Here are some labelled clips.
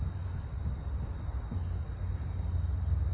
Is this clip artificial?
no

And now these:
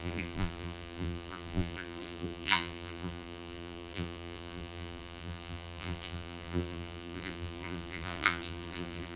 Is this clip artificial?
yes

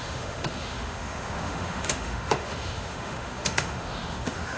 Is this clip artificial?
yes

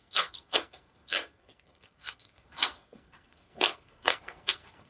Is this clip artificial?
yes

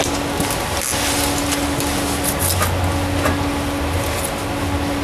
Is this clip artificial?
no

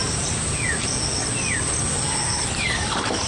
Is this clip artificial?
no